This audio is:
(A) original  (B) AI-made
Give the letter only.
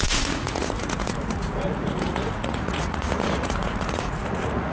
B